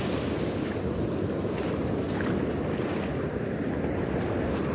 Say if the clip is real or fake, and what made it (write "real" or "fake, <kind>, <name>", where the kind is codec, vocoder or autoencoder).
real